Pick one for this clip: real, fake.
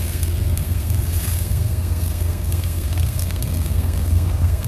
fake